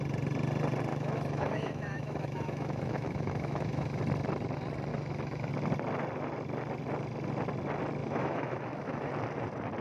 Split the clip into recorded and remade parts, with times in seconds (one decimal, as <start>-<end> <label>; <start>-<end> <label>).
0.0-0.9 recorded; 0.9-4.0 remade; 4.0-4.9 recorded; 4.9-5.5 remade; 5.5-8.0 recorded; 8.0-9.1 remade; 9.1-9.8 recorded